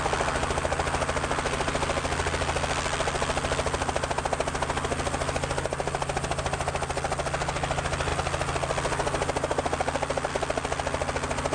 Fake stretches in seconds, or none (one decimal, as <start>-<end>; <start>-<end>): none